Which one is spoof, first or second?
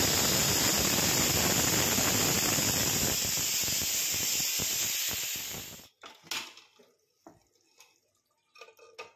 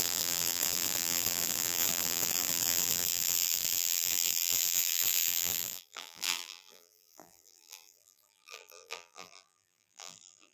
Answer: second